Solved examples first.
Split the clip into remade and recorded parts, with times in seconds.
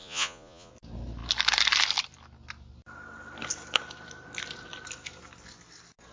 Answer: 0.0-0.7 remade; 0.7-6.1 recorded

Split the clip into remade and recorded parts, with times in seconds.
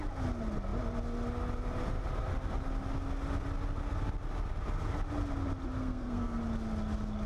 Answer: 0.0-5.8 recorded; 5.8-6.4 remade; 6.4-7.3 recorded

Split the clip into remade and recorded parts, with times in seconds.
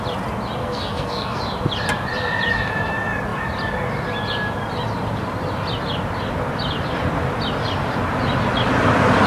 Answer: 0.0-0.6 recorded; 0.6-1.4 remade; 1.4-9.3 recorded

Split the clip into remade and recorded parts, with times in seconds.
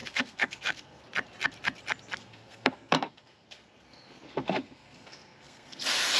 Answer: 0.0-1.0 remade; 1.0-2.2 recorded; 2.2-5.8 remade; 5.8-6.2 recorded